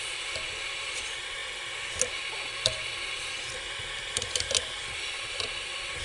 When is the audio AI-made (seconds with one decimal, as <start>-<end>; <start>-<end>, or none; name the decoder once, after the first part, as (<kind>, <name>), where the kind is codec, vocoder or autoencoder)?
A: none